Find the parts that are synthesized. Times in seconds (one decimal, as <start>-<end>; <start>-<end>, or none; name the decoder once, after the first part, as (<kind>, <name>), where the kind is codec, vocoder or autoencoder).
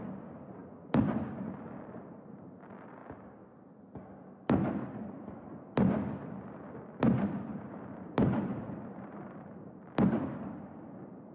7.5-9.8 (vocoder, BigVGAN v2)